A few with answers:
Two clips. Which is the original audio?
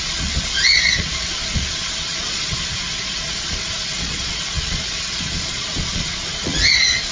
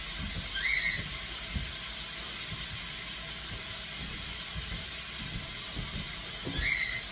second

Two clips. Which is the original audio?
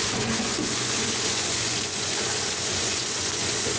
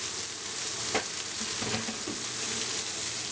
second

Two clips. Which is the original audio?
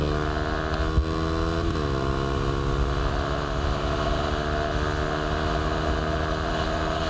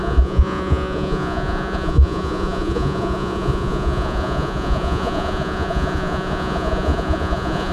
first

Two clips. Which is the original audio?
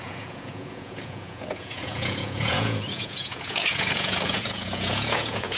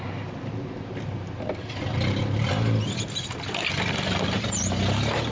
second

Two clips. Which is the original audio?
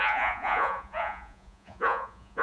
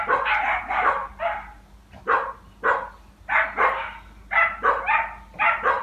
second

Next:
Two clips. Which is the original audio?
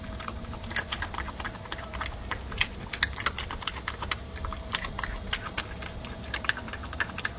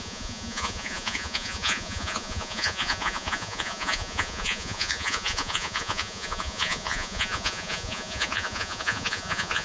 first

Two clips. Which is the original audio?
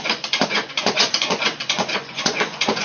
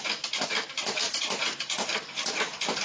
second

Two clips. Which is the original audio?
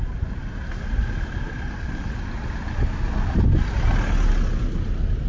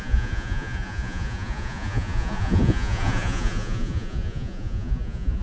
first